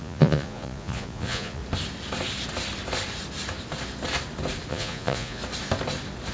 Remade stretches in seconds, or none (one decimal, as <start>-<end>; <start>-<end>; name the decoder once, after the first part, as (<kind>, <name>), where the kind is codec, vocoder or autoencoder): 0.0-1.6 (vocoder, Vocos); 4.7-5.4